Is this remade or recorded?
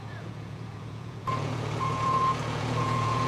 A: remade